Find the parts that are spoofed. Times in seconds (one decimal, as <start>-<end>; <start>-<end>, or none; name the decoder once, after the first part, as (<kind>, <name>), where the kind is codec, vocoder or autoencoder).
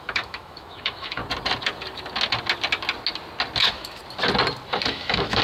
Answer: 0.0-1.2 (autoencoder, DAC-VAE); 3.6-4.0; 4.9-5.4